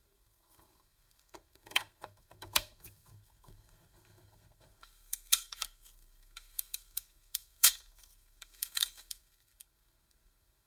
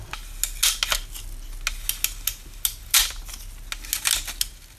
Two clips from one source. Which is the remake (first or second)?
first